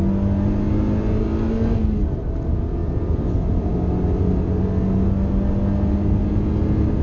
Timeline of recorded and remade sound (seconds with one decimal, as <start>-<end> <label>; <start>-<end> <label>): 0.0-7.0 recorded